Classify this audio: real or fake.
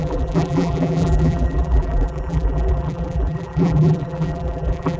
fake